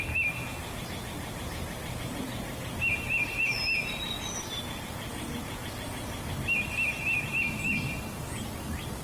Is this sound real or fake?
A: real